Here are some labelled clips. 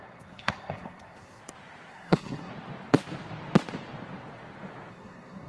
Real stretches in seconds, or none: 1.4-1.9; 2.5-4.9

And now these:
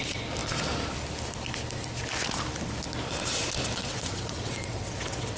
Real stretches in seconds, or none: 0.0-3.8